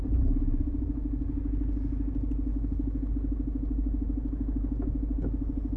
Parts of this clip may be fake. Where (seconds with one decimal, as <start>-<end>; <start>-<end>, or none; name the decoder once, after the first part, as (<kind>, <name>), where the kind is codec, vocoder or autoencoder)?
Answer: 2.5-3.1 (codec, HILCodec)